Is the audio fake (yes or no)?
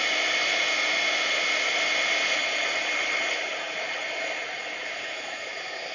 no